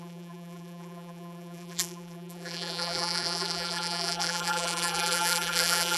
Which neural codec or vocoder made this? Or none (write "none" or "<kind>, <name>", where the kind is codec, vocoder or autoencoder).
vocoder, BigVGAN v2